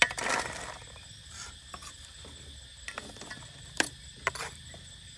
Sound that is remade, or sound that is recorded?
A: recorded